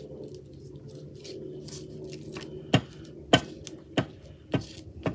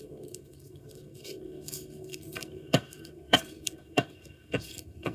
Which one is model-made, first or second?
second